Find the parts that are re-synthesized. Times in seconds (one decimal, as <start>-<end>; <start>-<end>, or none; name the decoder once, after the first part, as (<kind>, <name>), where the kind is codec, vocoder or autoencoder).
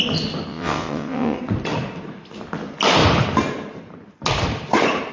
0.5-1.4 (vocoder, WaveNeXt)